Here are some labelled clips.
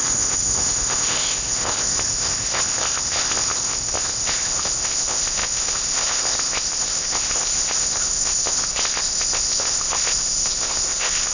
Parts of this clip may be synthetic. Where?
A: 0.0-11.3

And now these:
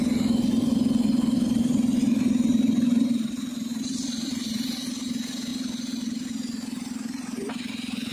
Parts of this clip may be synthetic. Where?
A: 2.5-3.3; 3.7-4.7